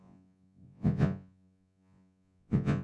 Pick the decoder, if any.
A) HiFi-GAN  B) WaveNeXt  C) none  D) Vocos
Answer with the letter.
D